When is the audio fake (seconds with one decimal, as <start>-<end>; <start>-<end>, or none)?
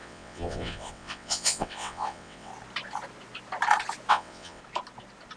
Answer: 0.0-2.5; 4.1-4.6